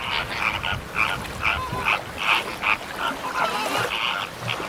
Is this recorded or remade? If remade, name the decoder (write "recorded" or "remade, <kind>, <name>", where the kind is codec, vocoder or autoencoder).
recorded